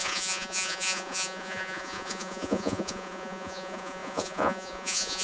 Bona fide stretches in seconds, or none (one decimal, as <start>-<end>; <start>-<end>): none